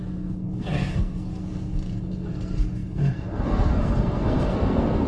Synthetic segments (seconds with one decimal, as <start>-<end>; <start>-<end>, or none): 0.0-5.1